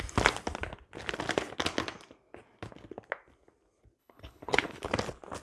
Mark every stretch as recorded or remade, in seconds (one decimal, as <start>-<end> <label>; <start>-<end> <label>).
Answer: 0.0-4.0 recorded; 4.0-4.9 remade; 4.9-5.4 recorded